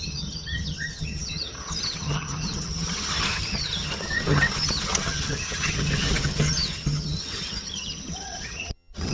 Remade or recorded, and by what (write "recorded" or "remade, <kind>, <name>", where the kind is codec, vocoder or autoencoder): remade, vocoder, HiFi-GAN